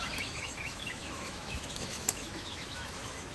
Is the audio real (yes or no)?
no